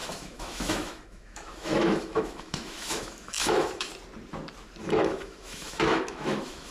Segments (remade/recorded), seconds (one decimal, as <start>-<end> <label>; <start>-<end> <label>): 0.0-3.9 remade; 3.9-4.8 recorded; 4.8-6.7 remade